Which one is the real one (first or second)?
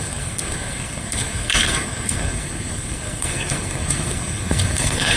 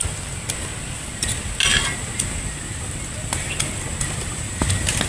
second